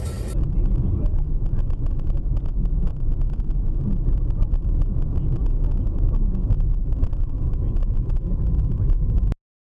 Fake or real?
real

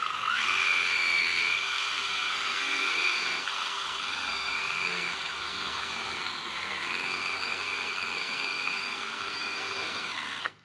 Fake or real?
fake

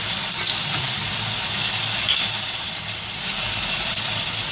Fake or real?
real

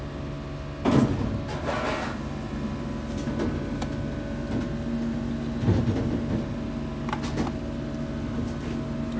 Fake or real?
real